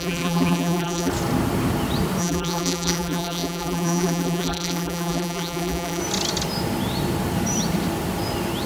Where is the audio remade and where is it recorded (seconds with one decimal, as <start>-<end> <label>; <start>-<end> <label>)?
0.0-1.1 remade; 1.1-2.2 recorded; 2.2-6.0 remade; 6.0-8.7 recorded